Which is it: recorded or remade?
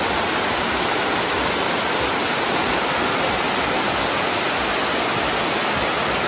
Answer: recorded